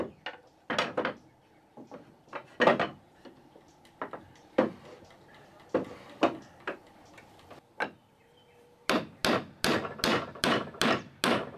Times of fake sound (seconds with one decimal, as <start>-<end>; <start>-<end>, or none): none